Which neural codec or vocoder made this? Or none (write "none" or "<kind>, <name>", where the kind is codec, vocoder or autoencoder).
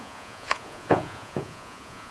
vocoder, Vocos